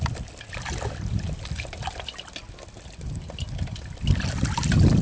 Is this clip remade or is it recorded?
recorded